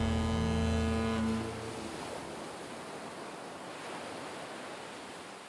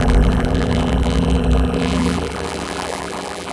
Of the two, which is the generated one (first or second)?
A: second